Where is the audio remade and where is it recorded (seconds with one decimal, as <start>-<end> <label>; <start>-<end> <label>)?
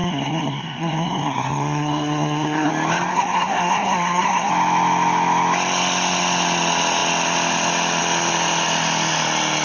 0.0-2.7 remade; 2.7-3.1 recorded; 3.1-4.5 remade; 4.5-9.6 recorded